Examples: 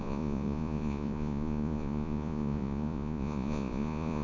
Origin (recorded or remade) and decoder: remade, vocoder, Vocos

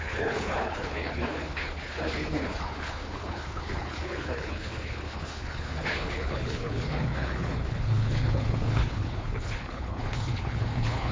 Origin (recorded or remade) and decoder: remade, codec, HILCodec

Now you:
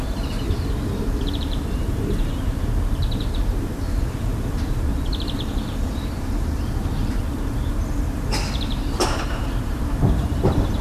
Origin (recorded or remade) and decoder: remade, vocoder, BigVGAN v2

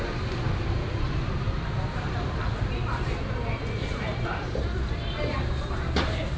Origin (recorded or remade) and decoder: remade, vocoder, BigVGAN v2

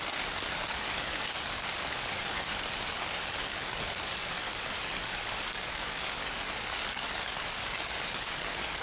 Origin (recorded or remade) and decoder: remade, codec, DAC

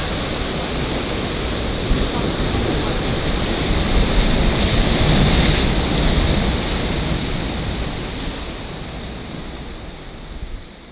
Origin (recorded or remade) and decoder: recorded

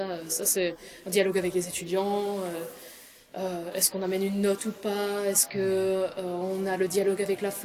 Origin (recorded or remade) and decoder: recorded